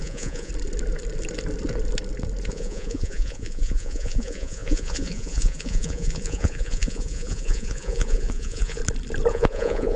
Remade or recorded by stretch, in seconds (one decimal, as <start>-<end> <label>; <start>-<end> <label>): 0.0-0.5 remade; 0.5-2.5 recorded; 2.5-8.8 remade; 8.8-9.3 recorded; 9.3-10.0 remade